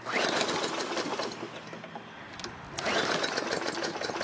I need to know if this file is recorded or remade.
recorded